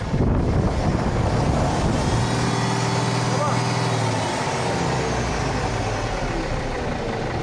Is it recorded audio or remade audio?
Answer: recorded